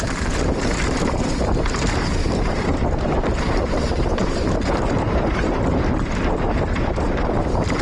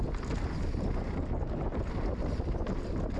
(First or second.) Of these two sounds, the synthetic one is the first